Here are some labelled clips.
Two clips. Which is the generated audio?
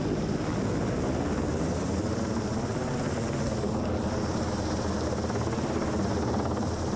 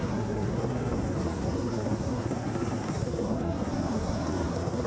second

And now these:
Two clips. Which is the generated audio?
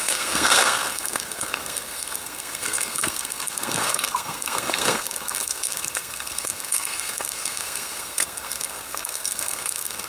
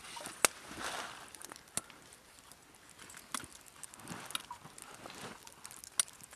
first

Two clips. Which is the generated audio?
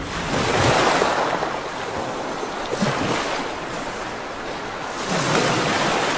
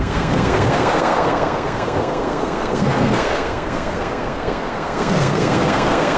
second